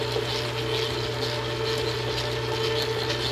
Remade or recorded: recorded